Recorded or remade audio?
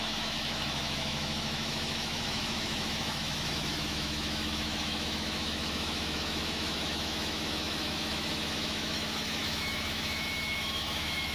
remade